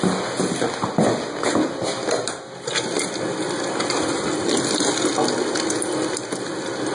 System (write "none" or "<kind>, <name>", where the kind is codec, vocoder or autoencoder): none